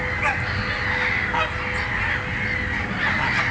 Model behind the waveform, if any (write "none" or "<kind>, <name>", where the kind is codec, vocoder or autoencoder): none